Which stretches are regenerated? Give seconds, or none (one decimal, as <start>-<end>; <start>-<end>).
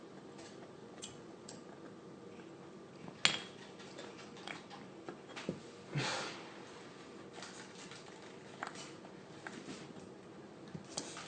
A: 0.8-1.7; 4.0-4.6